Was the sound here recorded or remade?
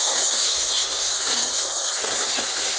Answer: remade